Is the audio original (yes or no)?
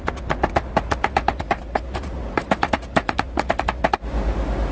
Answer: yes